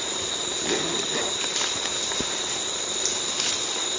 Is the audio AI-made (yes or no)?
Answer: no